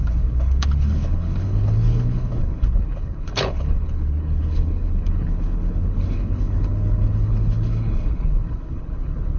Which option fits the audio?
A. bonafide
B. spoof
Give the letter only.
B